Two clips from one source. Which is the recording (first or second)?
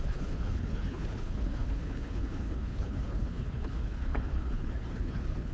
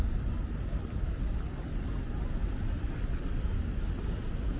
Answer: second